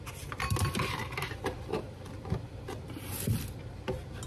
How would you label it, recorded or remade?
recorded